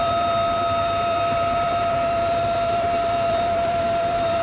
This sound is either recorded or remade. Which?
remade